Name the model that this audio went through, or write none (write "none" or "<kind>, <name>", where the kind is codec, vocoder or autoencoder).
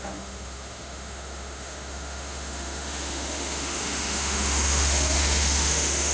autoencoder, DAC-VAE